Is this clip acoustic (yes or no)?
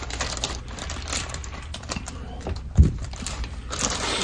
no